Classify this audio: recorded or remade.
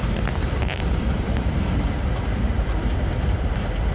remade